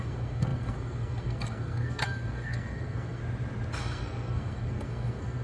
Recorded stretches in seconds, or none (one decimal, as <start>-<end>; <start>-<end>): 3.2-3.8